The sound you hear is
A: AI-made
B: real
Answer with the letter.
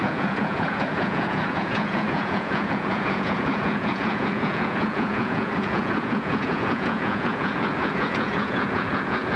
A